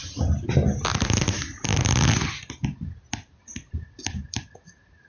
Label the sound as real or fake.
real